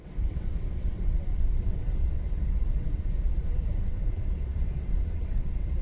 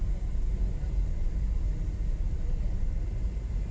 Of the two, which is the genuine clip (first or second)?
second